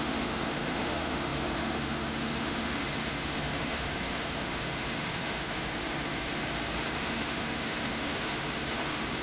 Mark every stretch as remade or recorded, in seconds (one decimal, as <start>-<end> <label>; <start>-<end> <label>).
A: 0.0-6.4 remade; 6.4-7.0 recorded; 7.0-9.2 remade